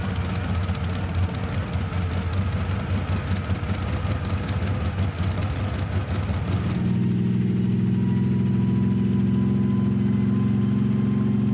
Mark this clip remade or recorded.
recorded